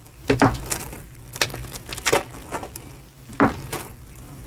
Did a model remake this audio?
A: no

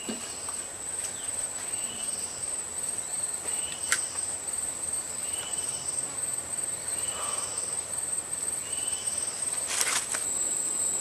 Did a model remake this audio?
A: yes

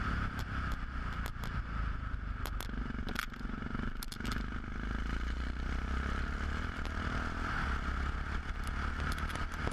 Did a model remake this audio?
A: no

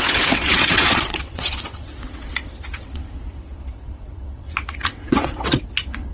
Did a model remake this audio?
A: yes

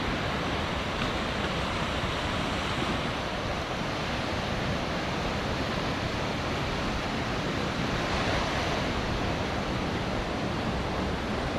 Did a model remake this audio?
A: yes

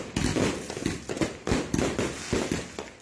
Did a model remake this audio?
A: no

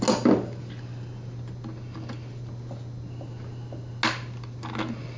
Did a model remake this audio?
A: no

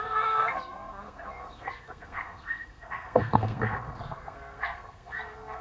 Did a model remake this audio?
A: yes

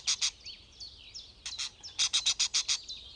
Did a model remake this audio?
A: no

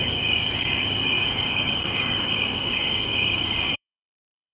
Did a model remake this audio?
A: yes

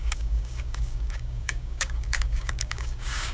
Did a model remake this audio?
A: yes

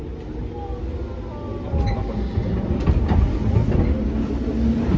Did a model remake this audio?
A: no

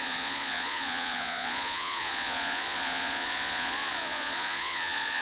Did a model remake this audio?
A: yes